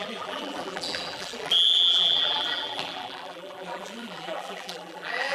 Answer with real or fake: fake